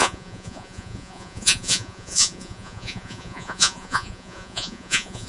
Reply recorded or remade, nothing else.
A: remade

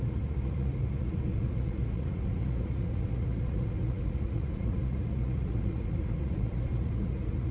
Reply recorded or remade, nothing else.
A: remade